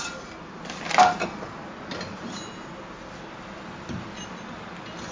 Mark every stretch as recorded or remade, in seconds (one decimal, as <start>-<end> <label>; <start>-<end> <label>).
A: 0.0-5.1 recorded